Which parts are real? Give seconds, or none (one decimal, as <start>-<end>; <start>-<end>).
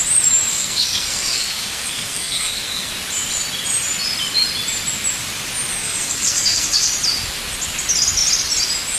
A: 0.0-0.5; 2.9-5.7; 6.9-9.0